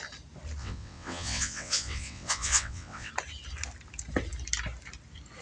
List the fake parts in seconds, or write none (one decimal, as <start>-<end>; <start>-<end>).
0.6-3.1